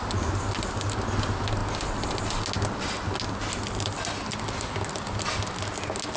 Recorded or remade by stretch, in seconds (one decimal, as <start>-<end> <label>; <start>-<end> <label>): 0.0-6.2 recorded